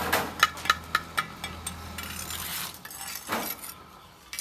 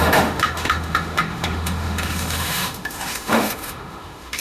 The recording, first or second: first